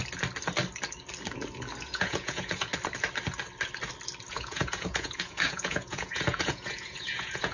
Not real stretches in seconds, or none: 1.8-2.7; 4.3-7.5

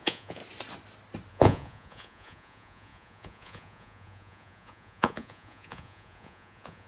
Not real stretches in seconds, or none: 0.0-0.4; 1.3-6.9